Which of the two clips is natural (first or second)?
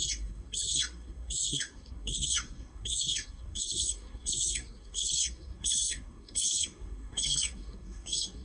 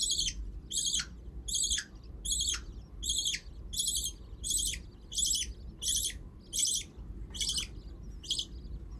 second